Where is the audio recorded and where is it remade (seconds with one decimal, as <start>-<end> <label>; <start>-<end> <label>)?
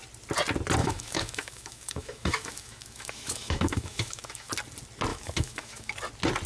0.0-0.8 recorded; 0.8-4.5 remade; 4.5-5.1 recorded; 5.1-5.9 remade; 5.9-6.5 recorded